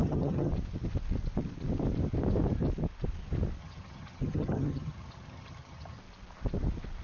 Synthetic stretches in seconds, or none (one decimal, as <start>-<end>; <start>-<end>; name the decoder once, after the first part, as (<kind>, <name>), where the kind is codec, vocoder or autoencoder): 0.0-0.5 (vocoder, HiFi-GAN); 3.6-6.0